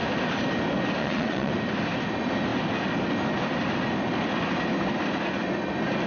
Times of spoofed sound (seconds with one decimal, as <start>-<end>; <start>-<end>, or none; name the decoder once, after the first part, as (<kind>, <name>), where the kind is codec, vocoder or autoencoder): 1.0-1.5 (vocoder, WaveNeXt)